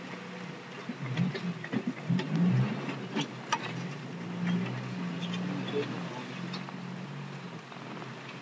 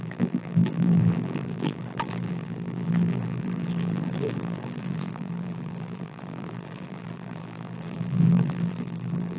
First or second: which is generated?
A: second